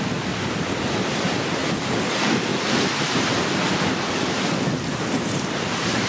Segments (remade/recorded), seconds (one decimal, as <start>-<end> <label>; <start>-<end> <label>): 0.0-2.5 recorded; 2.5-3.2 remade; 3.2-5.1 recorded; 5.1-6.1 remade